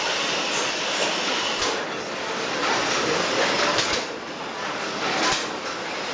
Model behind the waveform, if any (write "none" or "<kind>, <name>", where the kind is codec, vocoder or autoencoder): none